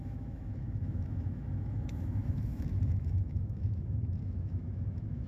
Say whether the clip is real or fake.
fake